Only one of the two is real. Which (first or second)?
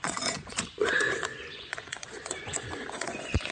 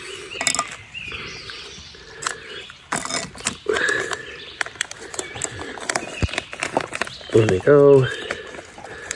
second